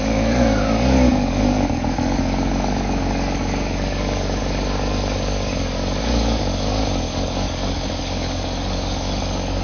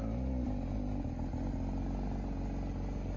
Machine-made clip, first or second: first